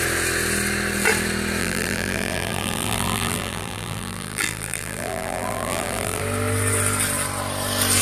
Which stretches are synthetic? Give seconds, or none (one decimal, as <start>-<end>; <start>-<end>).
1.6-6.2